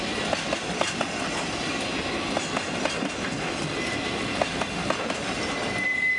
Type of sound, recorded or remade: recorded